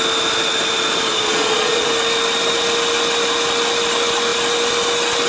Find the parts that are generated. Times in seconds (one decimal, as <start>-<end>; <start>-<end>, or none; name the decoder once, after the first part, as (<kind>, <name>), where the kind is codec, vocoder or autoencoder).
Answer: 1.1-1.9 (vocoder, Vocos)